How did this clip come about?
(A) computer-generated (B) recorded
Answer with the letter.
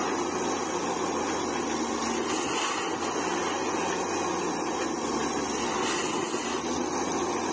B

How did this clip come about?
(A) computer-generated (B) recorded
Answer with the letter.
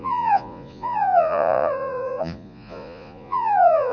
A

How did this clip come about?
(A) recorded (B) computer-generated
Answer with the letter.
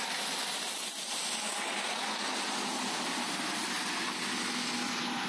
A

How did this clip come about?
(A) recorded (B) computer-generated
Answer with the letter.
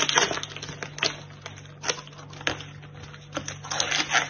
A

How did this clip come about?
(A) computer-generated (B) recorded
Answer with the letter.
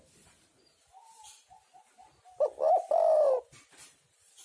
A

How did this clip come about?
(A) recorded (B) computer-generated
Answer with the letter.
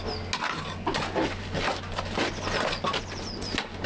A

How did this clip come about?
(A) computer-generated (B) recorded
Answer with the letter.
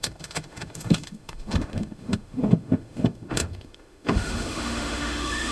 A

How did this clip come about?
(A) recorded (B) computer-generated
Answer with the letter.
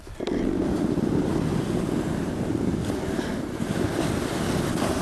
A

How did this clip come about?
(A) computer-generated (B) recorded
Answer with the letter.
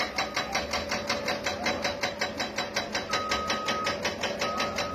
B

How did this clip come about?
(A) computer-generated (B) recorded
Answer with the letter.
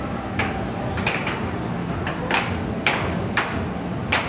B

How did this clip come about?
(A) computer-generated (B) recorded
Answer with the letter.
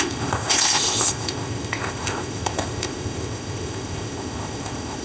A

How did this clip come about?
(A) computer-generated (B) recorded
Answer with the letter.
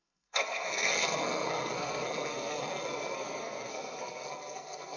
A